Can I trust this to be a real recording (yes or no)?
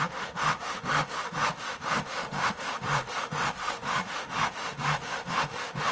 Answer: no